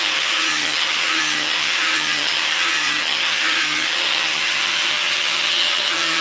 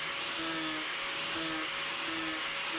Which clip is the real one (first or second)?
second